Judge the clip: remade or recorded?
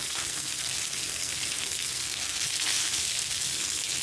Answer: remade